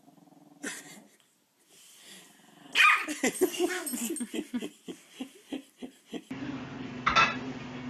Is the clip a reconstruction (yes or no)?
no